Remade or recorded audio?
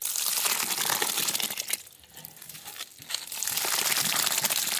recorded